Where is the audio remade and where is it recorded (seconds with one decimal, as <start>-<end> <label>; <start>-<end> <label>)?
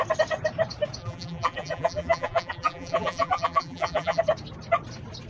0.0-1.0 recorded; 1.0-4.2 remade; 4.2-5.3 recorded